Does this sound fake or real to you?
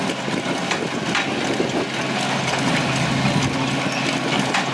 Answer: real